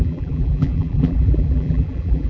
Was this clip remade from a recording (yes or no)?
yes